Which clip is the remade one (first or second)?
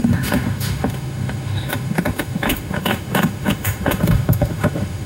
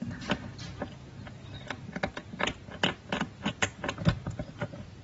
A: first